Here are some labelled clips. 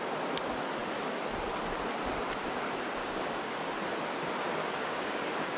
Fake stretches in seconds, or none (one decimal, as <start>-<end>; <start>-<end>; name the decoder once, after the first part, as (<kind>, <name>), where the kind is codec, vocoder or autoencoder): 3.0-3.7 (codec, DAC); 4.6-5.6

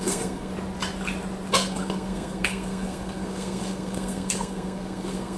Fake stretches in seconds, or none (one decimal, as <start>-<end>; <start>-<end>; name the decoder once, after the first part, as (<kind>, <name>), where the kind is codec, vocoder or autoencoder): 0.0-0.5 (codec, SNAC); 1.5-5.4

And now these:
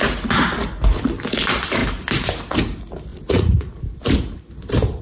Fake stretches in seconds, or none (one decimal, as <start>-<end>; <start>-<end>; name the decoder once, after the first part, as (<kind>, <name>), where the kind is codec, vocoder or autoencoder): 3.1-3.8 (vocoder, Vocos)

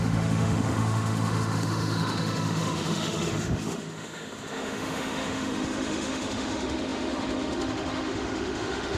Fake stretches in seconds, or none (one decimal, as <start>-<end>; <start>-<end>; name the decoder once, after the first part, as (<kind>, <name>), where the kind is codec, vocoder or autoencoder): 0.0-9.0 (autoencoder, DAC-VAE)

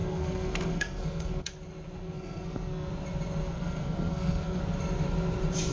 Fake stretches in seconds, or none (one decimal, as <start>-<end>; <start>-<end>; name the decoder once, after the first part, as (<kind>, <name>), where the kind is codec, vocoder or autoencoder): 0.0-1.5 (codec, SNAC); 2.0-2.9; 3.4-4.6

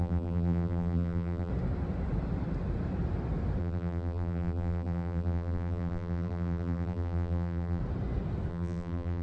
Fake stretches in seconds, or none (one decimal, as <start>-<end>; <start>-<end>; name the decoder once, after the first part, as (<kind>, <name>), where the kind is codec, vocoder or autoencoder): 0.0-1.5 (vocoder, BigVGAN v2); 3.6-7.8; 8.5-9.2

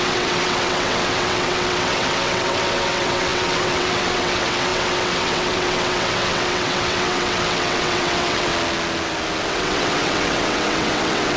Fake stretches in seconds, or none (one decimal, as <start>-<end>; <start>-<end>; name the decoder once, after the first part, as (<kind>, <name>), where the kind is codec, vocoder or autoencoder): 0.0-8.5 (vocoder, WaveNeXt); 9.4-11.4